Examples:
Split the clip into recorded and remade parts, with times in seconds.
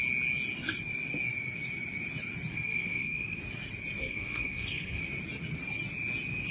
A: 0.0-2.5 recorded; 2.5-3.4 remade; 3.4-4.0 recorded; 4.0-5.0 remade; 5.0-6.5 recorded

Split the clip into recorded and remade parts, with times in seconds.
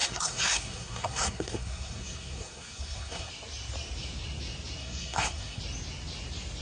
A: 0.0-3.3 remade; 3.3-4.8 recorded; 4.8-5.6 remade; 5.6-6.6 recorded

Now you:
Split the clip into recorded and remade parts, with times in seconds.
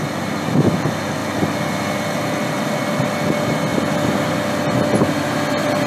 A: 0.0-5.9 recorded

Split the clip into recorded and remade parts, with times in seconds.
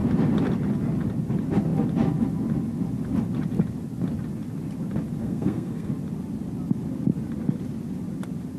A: 0.0-5.2 recorded; 5.2-5.9 remade; 5.9-8.6 recorded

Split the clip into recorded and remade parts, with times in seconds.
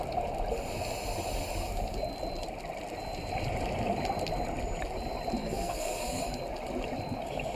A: 0.0-5.4 recorded; 5.4-6.2 remade; 6.2-7.6 recorded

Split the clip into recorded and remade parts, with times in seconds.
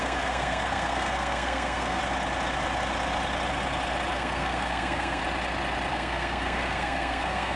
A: 0.0-2.0 remade; 2.0-4.1 recorded; 4.1-5.2 remade; 5.2-5.9 recorded; 5.9-7.6 remade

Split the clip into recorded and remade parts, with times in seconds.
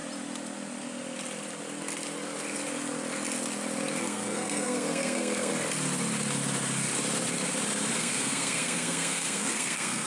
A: 0.0-4.0 recorded; 4.0-5.5 remade; 5.5-8.0 recorded; 8.0-10.1 remade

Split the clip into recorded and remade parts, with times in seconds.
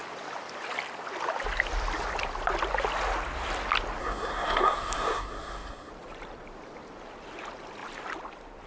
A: 0.0-4.0 recorded; 4.0-5.9 remade; 5.9-8.7 recorded